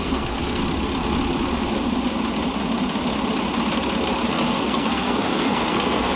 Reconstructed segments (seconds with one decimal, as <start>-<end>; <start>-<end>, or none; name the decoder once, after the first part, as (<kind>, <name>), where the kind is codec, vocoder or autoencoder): 0.0-0.6 (codec, SNAC); 4.3-6.2